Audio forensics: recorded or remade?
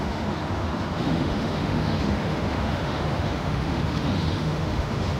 remade